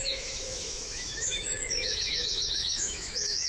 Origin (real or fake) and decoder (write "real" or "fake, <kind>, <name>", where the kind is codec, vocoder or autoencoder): fake, autoencoder, DAC-VAE